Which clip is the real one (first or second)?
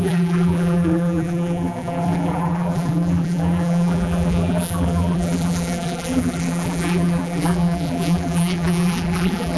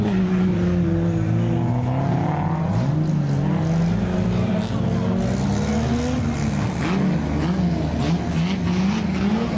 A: second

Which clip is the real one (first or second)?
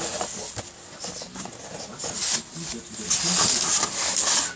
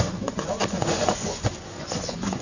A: first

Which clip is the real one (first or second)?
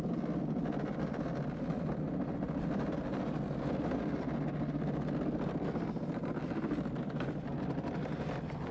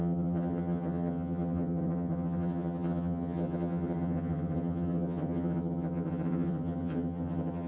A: first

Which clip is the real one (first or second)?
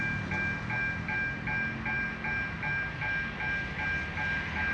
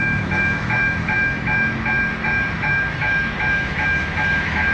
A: first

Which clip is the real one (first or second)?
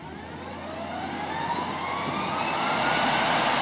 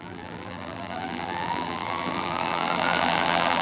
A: first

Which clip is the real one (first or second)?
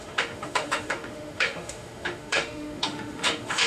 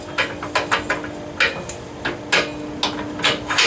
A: second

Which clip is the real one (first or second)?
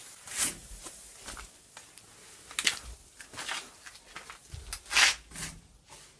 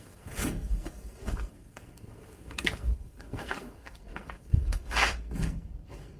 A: first